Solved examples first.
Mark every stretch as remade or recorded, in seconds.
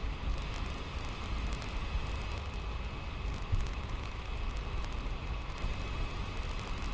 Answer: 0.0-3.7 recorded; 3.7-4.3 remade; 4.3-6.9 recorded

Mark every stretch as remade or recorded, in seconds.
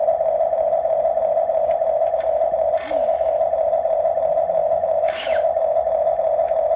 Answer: 0.0-4.6 recorded; 4.6-5.8 remade; 5.8-6.8 recorded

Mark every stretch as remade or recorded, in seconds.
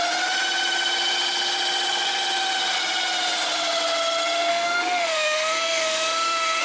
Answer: 0.0-4.5 recorded; 4.5-6.6 remade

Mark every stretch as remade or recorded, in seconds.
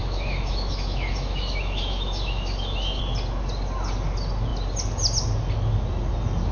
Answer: 0.0-3.0 remade; 3.0-6.5 recorded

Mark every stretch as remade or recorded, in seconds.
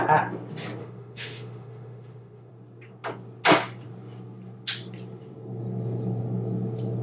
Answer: 0.0-0.8 recorded; 0.8-2.5 remade; 2.5-7.0 recorded